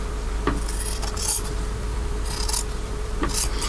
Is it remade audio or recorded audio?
remade